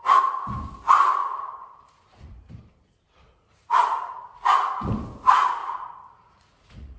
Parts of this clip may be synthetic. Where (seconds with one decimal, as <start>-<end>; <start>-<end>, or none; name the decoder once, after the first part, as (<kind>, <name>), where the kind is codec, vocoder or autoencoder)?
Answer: 1.2-2.5 (vocoder, Vocos); 3.5-4.9; 5.6-7.0